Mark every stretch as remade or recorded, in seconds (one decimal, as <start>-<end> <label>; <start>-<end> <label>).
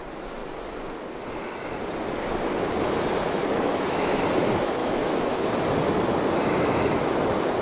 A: 0.0-3.4 recorded; 3.4-4.2 remade; 4.2-4.8 recorded; 4.8-5.5 remade; 5.5-7.6 recorded